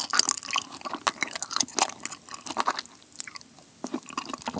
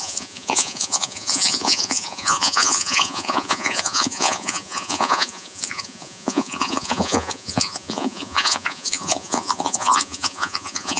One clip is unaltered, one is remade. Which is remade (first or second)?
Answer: second